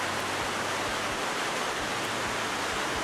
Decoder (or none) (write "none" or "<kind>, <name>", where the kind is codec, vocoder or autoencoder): none